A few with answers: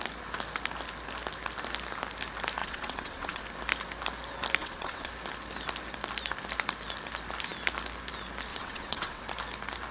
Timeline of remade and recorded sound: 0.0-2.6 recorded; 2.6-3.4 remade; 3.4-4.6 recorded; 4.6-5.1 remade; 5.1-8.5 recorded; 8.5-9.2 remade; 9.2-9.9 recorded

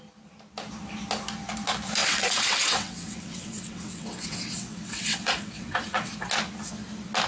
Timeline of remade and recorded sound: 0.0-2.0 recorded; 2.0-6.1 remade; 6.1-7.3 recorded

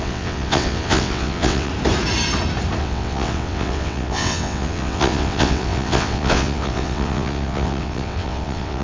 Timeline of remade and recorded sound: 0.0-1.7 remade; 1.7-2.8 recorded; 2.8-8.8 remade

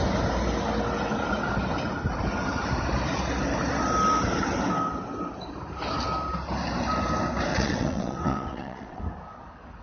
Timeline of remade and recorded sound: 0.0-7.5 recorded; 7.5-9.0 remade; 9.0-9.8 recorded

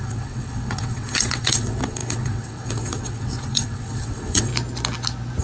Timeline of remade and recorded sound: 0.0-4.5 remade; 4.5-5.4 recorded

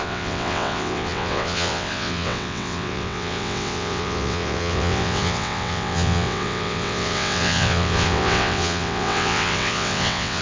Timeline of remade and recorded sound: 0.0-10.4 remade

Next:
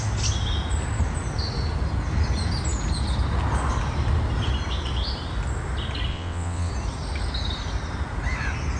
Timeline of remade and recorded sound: 0.0-6.1 recorded; 6.1-6.7 remade; 6.7-8.8 recorded